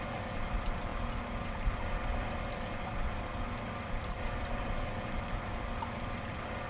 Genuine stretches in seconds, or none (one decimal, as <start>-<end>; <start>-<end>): none